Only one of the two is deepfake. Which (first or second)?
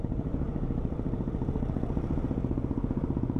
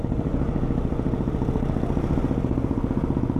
first